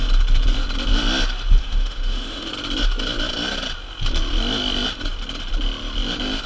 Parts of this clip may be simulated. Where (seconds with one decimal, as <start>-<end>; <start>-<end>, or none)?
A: 1.6-2.5